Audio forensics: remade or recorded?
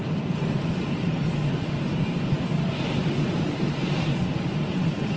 recorded